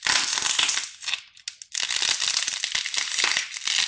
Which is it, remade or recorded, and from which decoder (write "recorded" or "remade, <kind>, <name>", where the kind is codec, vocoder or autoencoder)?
recorded